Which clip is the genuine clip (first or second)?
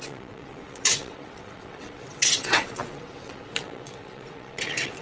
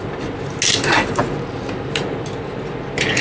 second